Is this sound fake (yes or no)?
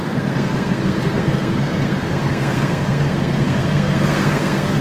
yes